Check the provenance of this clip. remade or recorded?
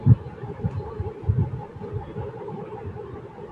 remade